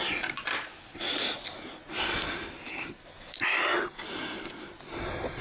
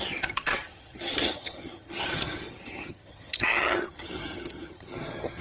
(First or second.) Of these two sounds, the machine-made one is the second